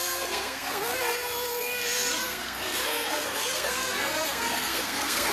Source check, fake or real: fake